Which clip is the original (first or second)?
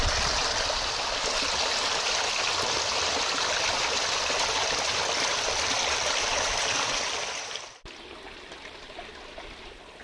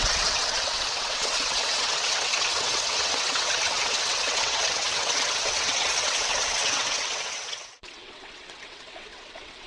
first